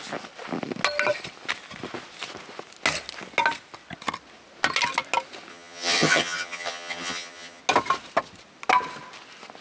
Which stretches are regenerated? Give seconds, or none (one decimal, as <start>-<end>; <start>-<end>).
5.5-7.6